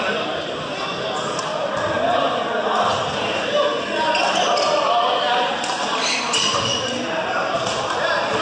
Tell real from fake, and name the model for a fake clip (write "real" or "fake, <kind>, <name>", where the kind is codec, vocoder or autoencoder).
real